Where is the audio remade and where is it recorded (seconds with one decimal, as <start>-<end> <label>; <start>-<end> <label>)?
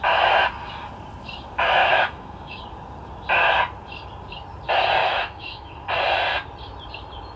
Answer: 0.0-1.8 recorded; 1.8-2.6 remade; 2.6-5.0 recorded; 5.0-5.7 remade; 5.7-7.4 recorded